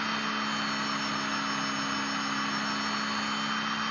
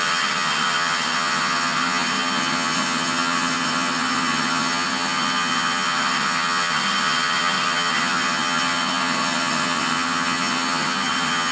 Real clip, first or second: first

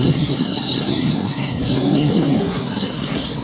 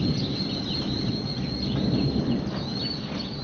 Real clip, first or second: second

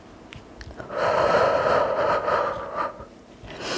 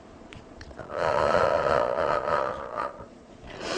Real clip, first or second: first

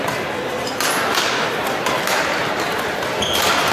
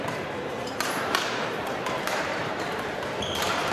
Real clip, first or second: first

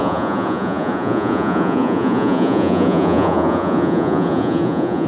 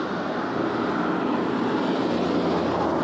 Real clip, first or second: second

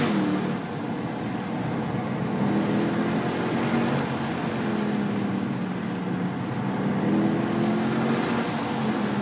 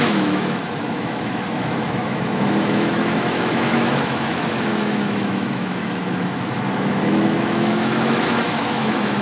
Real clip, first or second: first